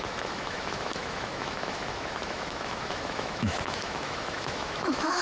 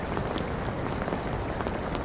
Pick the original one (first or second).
second